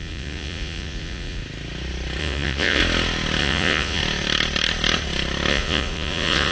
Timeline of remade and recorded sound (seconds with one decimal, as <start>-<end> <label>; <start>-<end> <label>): 0.0-1.4 remade; 1.4-2.2 recorded; 2.2-2.8 remade; 2.8-3.4 recorded; 3.4-4.0 remade; 4.0-5.5 recorded; 5.5-6.5 remade